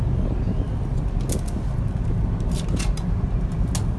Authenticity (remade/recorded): recorded